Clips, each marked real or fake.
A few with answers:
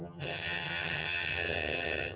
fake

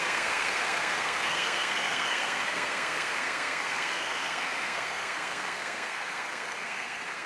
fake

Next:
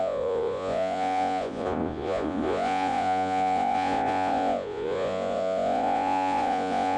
fake